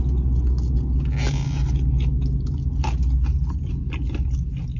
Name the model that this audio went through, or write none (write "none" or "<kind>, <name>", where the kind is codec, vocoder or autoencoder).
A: none